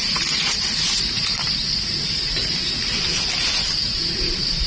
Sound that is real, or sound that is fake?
real